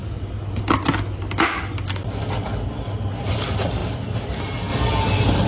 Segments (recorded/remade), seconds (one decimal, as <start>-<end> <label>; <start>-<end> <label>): 0.0-5.5 recorded